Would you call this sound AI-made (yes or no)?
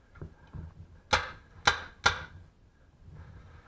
no